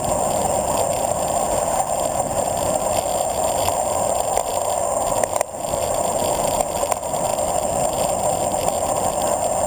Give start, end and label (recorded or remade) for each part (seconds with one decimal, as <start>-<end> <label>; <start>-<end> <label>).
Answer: 0.0-9.7 recorded